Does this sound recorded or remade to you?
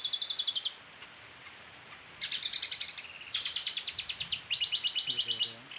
recorded